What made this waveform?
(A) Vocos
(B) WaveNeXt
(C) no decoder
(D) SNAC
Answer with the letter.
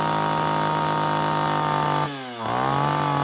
C